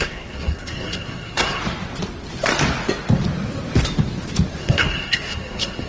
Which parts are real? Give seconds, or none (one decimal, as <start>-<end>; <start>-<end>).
1.6-4.6